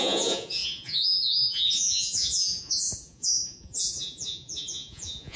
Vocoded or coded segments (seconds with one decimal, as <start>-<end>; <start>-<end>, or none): 0.0-5.4